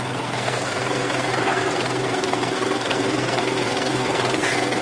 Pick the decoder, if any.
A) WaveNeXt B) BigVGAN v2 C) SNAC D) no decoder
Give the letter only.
C